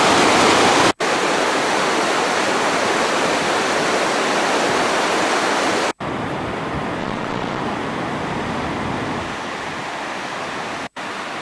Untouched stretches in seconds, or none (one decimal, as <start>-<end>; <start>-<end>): 0.0-7.0; 7.6-11.4